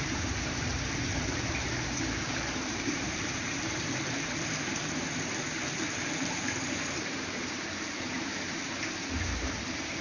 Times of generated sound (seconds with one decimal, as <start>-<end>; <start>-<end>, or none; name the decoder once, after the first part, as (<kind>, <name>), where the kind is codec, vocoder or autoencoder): 0.0-0.7 (vocoder, BigVGAN v2); 1.6-10.0